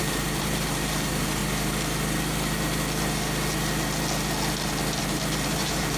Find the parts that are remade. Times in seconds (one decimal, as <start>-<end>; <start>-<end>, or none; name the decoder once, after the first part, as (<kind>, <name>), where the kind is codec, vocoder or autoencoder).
0.0-1.4 (vocoder, BigVGAN v2); 5.0-6.0